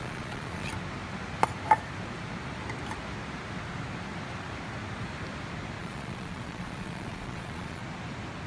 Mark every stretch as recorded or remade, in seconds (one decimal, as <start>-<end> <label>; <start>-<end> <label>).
0.0-0.7 remade; 0.7-5.8 recorded; 5.8-7.8 remade; 7.8-8.5 recorded